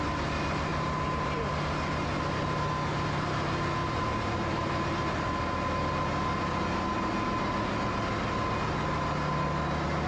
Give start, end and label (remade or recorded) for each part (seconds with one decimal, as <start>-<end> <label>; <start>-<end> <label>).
0.0-0.7 recorded; 0.7-1.5 remade; 1.5-3.8 recorded; 3.8-4.3 remade; 4.3-10.1 recorded